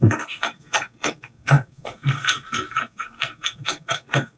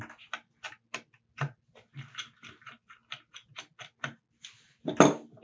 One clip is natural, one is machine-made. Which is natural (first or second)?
second